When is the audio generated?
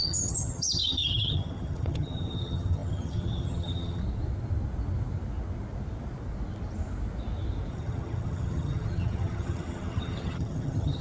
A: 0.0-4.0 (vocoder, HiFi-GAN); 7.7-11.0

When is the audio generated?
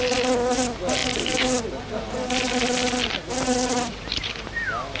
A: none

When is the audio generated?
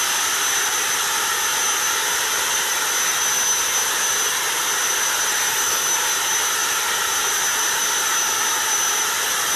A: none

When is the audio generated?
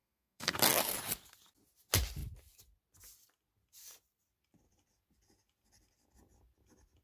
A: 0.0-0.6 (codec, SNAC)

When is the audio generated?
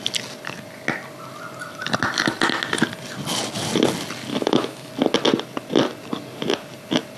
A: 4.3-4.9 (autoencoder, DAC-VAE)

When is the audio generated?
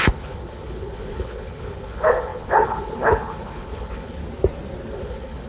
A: 0.0-4.2 (codec, HILCodec); 4.9-5.5